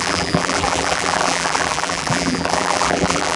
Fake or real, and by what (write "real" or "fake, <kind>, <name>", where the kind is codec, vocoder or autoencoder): fake, vocoder, BigVGAN v2